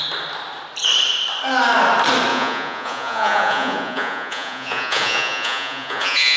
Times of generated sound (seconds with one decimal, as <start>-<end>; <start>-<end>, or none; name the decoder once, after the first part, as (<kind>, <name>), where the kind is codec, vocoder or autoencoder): 2.3-6.4 (vocoder, Vocos)